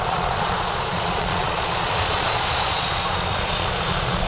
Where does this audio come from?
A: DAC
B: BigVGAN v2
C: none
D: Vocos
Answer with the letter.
D